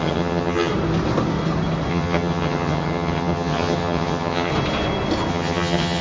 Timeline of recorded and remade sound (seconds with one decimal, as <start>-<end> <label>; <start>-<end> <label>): 0.0-0.7 remade; 0.7-1.9 recorded; 1.9-4.5 remade; 4.5-5.3 recorded; 5.3-6.0 remade